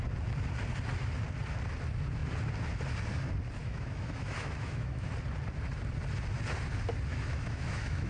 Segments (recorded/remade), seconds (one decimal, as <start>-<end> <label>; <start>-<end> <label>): 0.0-3.6 recorded; 3.6-5.1 remade; 5.1-7.1 recorded; 7.1-8.1 remade